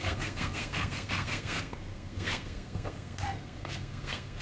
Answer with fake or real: fake